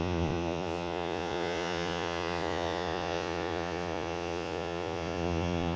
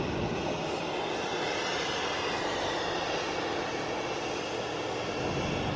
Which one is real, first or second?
second